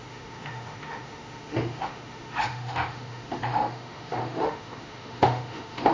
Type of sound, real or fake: fake